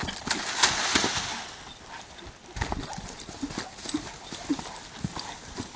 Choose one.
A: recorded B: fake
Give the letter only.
A